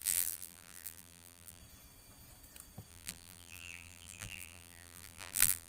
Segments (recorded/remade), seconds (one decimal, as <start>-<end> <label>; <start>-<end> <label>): 0.0-1.6 remade; 1.6-2.9 recorded; 2.9-5.7 remade